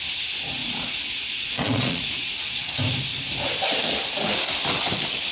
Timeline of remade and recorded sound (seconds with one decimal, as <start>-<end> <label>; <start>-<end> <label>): 0.0-0.6 recorded; 0.6-2.7 remade; 2.7-5.3 recorded